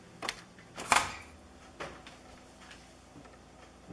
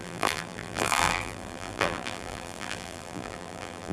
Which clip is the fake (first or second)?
second